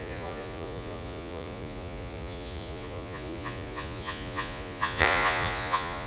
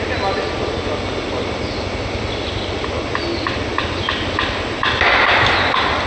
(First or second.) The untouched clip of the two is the second